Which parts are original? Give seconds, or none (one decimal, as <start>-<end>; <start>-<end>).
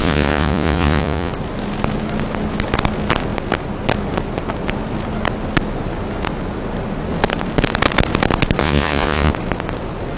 1.3-8.6; 9.3-10.2